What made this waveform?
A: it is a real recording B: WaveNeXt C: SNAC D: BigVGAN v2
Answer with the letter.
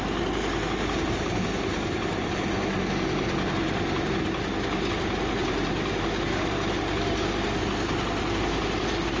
A